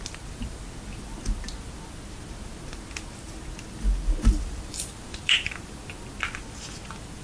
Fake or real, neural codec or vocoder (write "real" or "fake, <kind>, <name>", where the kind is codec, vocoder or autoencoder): real